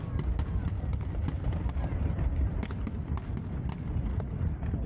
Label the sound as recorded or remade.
recorded